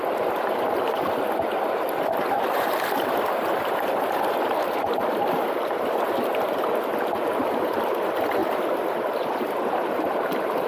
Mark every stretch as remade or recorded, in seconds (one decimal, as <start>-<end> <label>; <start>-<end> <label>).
0.0-10.7 recorded